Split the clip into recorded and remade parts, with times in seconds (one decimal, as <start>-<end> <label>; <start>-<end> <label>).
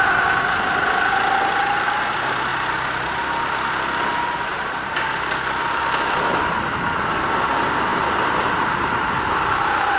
0.0-4.5 recorded; 4.5-5.1 remade; 5.1-7.9 recorded; 7.9-10.0 remade